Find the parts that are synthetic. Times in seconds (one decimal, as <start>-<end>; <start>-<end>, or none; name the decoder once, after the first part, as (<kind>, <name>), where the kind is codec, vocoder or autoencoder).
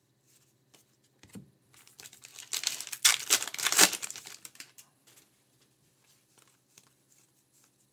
0.0-2.3 (vocoder, BigVGAN v2); 3.6-7.9